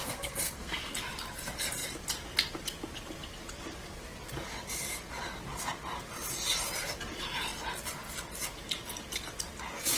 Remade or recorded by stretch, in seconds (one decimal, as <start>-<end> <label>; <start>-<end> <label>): 0.0-0.9 remade; 0.9-10.0 recorded